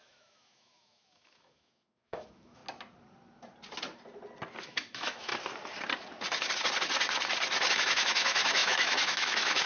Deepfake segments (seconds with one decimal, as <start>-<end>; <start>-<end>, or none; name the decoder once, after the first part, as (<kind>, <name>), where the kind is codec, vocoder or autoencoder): 0.0-2.6 (autoencoder, DAC-VAE); 4.6-5.3; 7.7-9.7

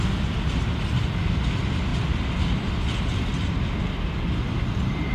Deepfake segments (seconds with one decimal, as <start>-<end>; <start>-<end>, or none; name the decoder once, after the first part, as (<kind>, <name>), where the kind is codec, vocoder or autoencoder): none

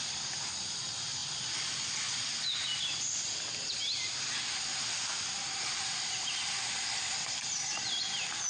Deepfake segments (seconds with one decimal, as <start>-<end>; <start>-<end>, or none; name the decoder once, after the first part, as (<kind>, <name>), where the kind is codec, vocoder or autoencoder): none